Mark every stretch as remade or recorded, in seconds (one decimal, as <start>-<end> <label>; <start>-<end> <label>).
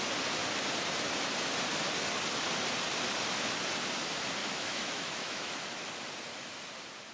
0.0-4.4 recorded; 4.4-5.5 remade; 5.5-7.1 recorded